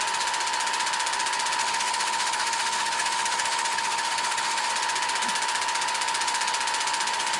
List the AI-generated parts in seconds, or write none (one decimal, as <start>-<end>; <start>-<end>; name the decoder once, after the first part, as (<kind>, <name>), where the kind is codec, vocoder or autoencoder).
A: 1.6-4.7 (autoencoder, DAC-VAE)